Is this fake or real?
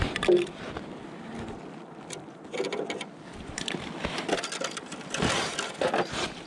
fake